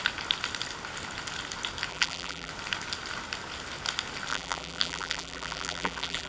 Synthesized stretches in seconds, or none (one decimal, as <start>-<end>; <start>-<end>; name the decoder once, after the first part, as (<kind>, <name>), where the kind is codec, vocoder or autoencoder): 1.9-2.5 (vocoder, BigVGAN v2); 4.3-6.3